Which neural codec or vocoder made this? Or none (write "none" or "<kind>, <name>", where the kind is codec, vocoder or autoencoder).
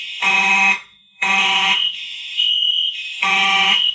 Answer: autoencoder, DAC-VAE